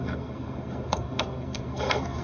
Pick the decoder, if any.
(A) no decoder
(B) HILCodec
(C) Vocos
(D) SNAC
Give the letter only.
D